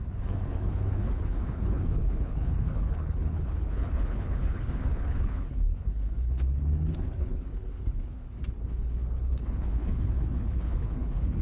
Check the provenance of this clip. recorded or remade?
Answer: remade